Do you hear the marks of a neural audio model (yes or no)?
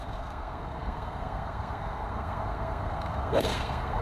yes